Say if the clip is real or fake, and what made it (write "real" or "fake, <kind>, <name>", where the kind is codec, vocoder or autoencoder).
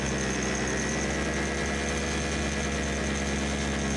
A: real